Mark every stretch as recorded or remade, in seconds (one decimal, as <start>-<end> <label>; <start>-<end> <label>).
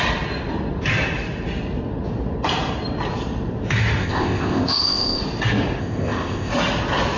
0.0-4.0 recorded; 4.0-5.2 remade; 5.2-5.8 recorded; 5.8-6.5 remade; 6.5-7.2 recorded